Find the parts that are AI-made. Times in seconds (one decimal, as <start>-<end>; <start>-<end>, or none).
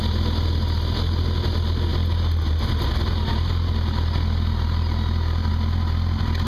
none